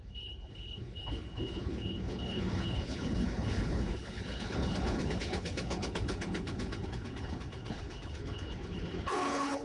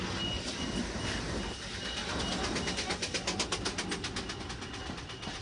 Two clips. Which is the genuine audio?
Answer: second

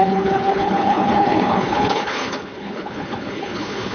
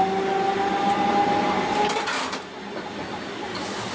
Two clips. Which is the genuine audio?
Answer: second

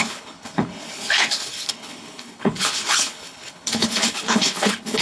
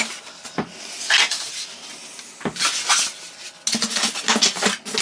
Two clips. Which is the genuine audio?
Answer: second